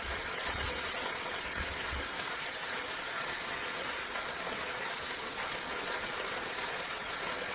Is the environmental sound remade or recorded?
remade